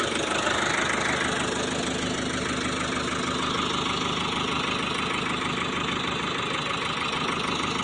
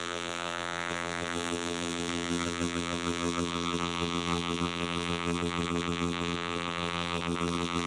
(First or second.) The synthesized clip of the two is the second